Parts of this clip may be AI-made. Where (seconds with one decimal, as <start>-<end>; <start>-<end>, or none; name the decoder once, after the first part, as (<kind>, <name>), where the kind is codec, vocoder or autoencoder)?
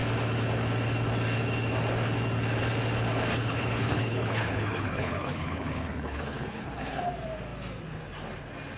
3.3-7.1 (codec, HILCodec)